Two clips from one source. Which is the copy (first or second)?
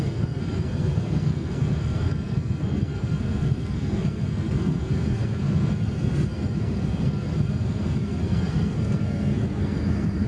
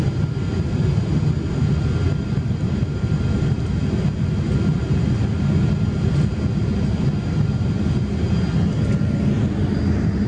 first